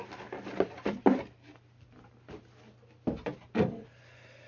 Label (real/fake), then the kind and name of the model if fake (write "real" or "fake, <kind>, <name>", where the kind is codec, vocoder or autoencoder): real